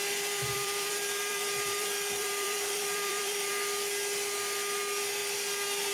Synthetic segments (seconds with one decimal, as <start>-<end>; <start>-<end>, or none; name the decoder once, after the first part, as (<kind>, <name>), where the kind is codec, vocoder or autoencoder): 0.0-3.5 (vocoder, BigVGAN v2)